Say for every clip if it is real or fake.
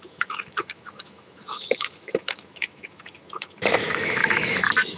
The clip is fake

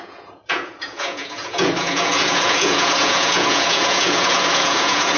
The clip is fake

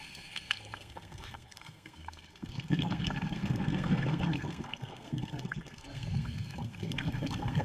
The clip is fake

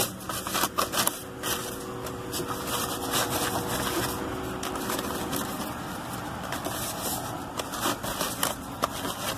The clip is real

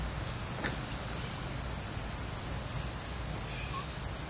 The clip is real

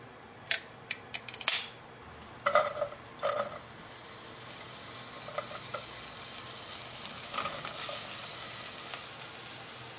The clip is real